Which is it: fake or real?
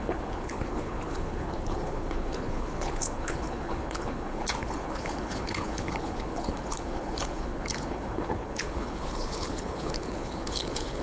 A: fake